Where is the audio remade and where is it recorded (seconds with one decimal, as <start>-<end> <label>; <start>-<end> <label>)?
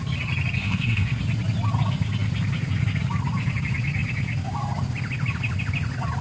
0.0-0.6 recorded; 0.6-1.2 remade; 1.2-6.2 recorded